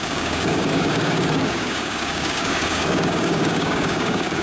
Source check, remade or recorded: remade